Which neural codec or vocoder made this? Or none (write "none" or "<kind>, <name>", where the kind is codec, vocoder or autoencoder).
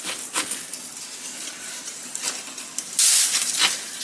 none